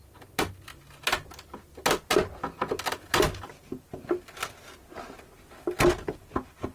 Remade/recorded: recorded